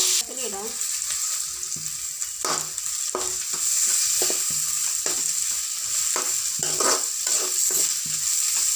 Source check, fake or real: real